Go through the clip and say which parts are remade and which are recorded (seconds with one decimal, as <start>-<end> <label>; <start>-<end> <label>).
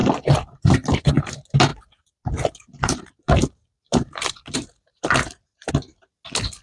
0.0-1.1 remade; 1.1-1.7 recorded; 1.7-5.7 remade; 5.7-6.6 recorded